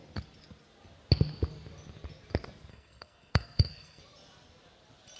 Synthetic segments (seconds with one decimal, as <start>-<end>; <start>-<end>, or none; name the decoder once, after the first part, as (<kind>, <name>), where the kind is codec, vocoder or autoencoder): 2.7-4.0 (codec, SNAC)